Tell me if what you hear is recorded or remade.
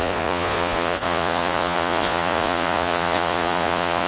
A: remade